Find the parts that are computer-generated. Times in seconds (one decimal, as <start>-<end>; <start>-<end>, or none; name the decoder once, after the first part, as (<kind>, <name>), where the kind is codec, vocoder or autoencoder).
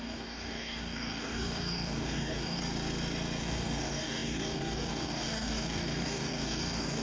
0.0-2.6 (codec, DAC); 3.4-7.0